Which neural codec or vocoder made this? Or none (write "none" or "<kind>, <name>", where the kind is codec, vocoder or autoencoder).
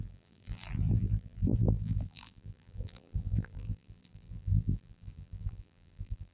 vocoder, BigVGAN v2